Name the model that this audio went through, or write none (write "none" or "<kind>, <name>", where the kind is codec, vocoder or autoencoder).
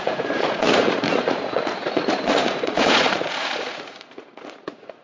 vocoder, Vocos